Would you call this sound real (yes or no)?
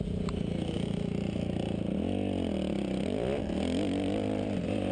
yes